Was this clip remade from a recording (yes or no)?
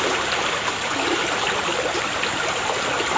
no